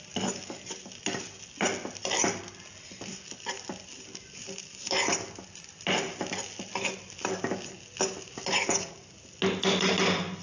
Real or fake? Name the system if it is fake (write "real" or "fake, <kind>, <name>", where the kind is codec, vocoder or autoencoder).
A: real